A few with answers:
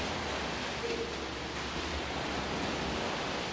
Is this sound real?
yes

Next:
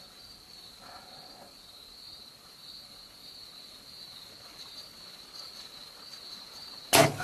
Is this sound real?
yes